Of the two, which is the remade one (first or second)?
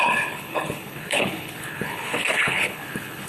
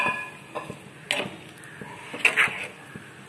first